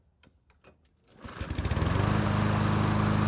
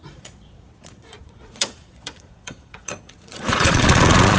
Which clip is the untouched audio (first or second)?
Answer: first